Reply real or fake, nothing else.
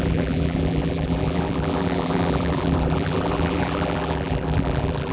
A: fake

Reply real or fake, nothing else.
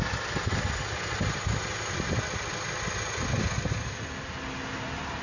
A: real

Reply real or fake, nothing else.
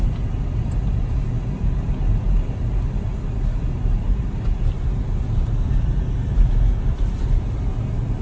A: real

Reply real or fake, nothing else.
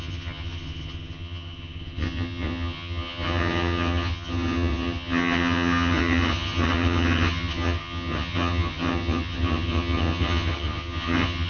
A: fake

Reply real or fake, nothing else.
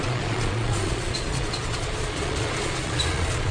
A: fake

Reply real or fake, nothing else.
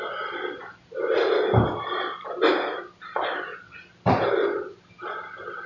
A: real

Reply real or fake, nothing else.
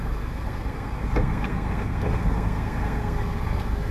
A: fake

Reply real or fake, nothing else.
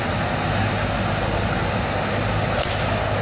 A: real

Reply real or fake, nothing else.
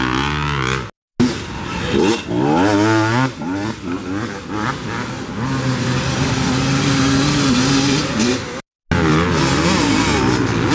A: real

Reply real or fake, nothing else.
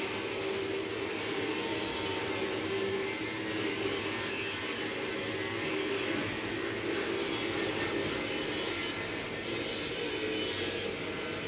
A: real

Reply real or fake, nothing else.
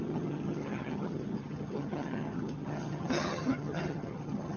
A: fake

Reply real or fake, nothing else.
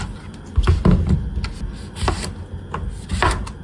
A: real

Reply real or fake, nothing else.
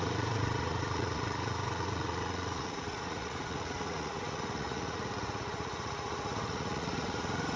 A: fake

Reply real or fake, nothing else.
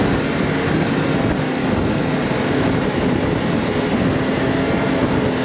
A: real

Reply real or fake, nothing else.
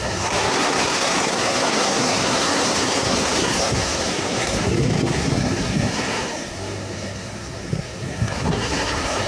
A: fake